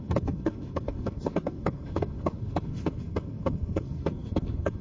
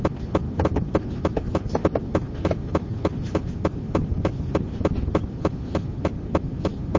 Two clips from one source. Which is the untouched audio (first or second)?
second